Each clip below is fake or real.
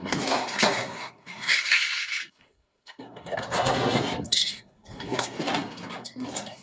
fake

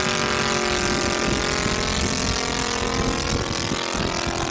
real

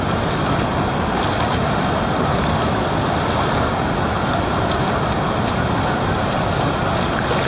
real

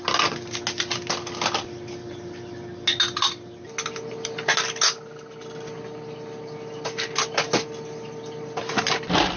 real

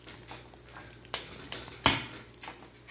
real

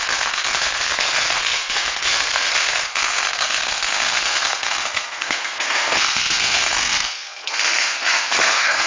fake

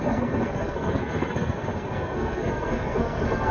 fake